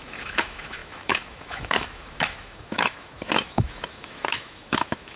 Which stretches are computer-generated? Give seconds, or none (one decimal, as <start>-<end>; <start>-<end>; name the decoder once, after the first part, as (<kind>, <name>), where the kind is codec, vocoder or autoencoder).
0.0-5.2 (autoencoder, DAC-VAE)